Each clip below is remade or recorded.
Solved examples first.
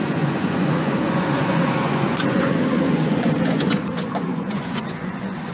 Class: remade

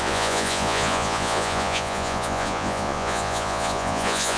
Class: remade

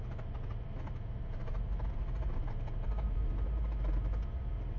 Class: recorded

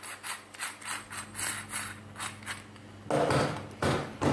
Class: recorded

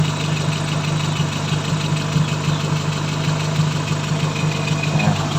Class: recorded